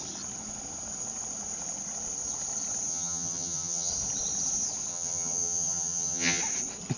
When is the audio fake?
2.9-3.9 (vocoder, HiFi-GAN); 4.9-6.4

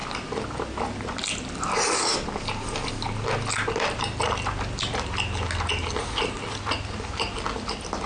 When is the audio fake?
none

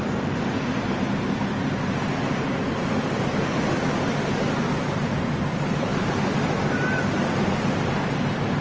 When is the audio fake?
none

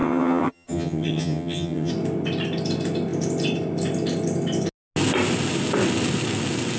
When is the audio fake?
0.0-1.9 (vocoder, HiFi-GAN)

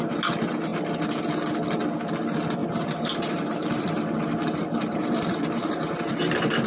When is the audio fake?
2.6-5.9 (vocoder, BigVGAN v2)